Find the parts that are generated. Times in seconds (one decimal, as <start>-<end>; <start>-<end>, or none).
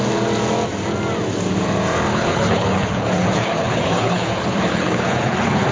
2.1-5.7